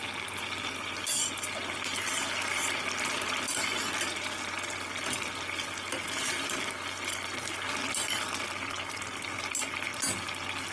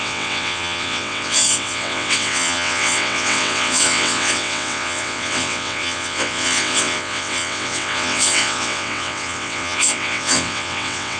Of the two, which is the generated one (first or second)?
second